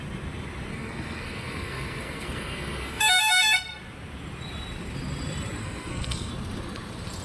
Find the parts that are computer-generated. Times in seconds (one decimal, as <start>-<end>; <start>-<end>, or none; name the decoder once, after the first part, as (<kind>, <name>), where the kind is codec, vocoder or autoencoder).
0.7-3.8 (codec, SNAC); 5.6-6.3